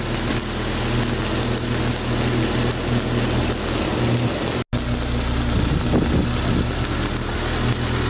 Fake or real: real